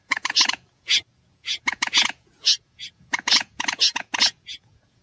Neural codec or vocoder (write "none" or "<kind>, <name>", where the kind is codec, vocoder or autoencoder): vocoder, Vocos